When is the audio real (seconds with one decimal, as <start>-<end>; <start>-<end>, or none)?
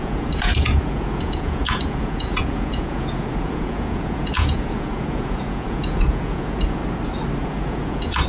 6.8-7.4